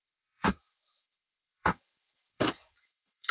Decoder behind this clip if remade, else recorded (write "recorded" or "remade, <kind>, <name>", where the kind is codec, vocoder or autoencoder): remade, autoencoder, DAC-VAE